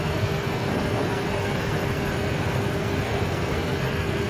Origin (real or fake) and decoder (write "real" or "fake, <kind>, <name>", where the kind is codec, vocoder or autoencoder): fake, codec, SNAC